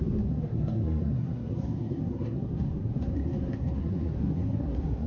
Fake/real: fake